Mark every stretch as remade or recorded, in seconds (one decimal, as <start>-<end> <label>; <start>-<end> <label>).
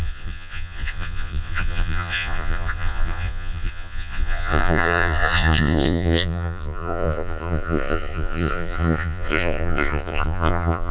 0.0-10.9 remade